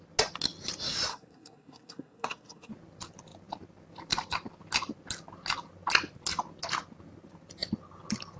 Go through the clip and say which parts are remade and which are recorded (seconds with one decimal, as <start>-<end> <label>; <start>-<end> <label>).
0.0-1.1 recorded; 1.1-2.7 remade; 2.7-8.4 recorded